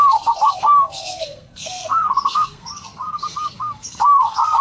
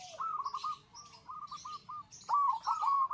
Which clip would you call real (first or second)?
second